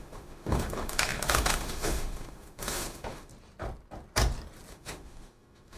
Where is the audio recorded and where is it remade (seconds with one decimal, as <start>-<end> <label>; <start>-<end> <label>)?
0.0-3.3 remade; 3.3-4.7 recorded; 4.7-5.8 remade